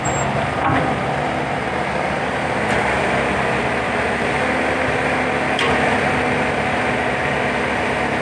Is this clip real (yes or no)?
yes